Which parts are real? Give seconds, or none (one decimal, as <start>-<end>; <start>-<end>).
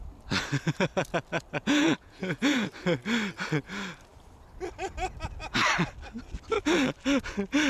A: 0.0-1.6; 2.7-7.7